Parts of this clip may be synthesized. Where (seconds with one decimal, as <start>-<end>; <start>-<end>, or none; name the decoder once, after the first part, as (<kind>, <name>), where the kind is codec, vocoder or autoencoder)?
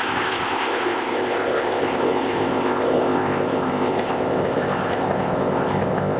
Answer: 0.0-6.2 (codec, ZipCodec)